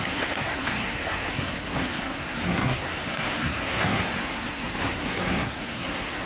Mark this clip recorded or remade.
remade